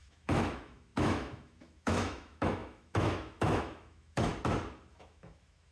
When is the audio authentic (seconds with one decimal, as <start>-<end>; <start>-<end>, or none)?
4.3-4.9